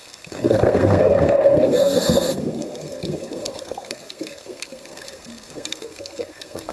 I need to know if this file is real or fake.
fake